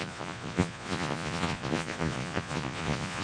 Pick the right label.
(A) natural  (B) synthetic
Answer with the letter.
B